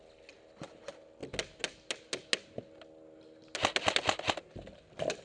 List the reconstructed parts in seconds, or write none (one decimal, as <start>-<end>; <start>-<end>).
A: none